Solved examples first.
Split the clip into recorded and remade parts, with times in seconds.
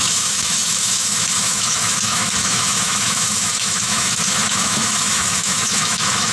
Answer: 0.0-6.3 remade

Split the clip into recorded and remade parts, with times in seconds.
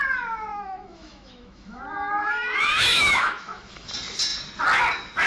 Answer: 0.0-0.5 recorded; 0.5-1.8 remade; 1.8-2.2 recorded; 2.2-3.9 remade; 3.9-5.3 recorded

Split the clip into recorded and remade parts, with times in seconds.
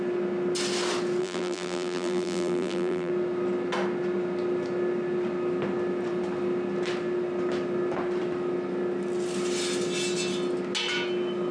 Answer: 0.0-1.2 recorded; 1.2-3.1 remade; 3.1-11.5 recorded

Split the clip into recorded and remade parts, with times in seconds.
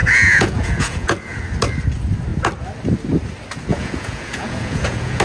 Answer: 0.0-1.4 remade; 1.4-3.7 recorded; 3.7-5.2 remade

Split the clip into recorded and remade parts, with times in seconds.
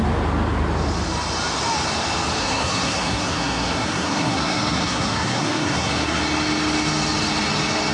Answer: 0.0-2.4 recorded; 2.4-6.2 remade; 6.2-7.9 recorded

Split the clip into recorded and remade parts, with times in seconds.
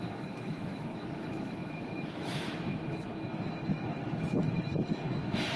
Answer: 0.0-5.6 remade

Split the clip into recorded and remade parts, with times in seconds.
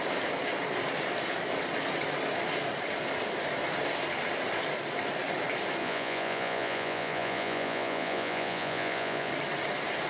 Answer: 0.0-5.8 recorded; 5.8-9.3 remade; 9.3-10.1 recorded